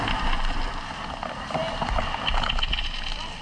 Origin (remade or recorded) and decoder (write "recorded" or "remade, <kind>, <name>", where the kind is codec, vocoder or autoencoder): recorded